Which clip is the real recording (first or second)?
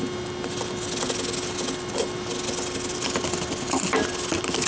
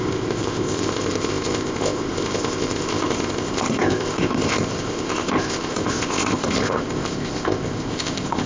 first